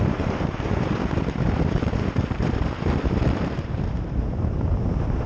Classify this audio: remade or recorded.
remade